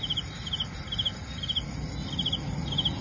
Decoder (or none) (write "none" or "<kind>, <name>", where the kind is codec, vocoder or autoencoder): none